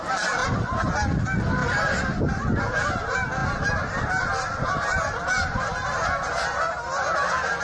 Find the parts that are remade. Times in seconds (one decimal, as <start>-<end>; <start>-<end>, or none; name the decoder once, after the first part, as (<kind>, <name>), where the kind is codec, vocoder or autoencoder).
0.4-0.9 (vocoder, BigVGAN v2)